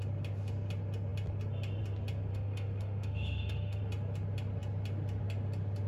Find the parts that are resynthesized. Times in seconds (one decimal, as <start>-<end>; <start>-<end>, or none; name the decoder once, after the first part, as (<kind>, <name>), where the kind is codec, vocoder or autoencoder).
2.3-3.8 (autoencoder, DAC-VAE)